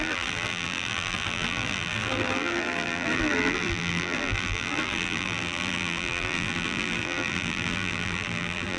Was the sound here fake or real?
fake